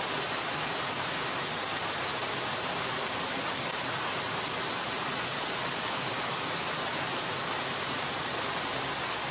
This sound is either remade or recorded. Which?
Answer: recorded